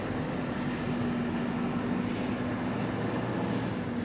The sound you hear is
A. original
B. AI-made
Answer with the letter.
A